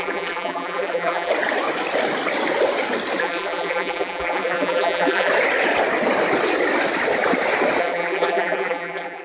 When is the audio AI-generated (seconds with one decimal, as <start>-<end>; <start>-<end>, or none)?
0.0-1.3; 3.2-5.3; 7.8-9.2